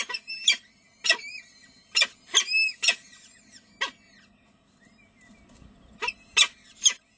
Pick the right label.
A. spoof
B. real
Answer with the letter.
B